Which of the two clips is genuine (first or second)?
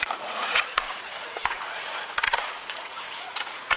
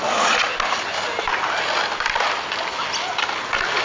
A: second